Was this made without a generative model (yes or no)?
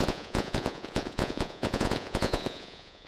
no